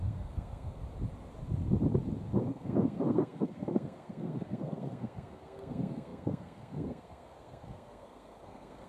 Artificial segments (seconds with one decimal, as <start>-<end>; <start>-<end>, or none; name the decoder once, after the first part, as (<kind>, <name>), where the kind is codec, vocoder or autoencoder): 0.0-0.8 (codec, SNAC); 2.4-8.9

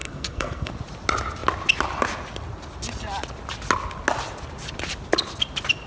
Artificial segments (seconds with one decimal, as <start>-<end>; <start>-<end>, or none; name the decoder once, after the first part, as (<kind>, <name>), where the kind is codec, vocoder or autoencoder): 0.0-0.7 (codec, SNAC)

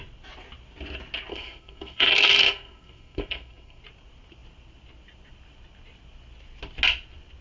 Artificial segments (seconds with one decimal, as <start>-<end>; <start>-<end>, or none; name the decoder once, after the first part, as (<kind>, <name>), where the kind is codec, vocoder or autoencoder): 1.3-3.8 (codec, SNAC)